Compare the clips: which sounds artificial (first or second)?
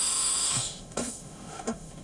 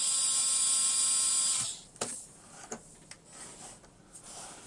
first